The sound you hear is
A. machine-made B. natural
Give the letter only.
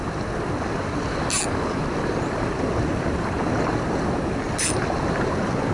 B